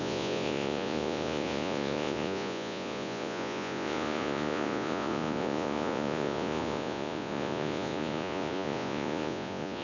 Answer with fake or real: fake